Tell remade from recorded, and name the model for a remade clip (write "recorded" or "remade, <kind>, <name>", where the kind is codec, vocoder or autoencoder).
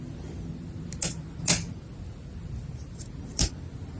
recorded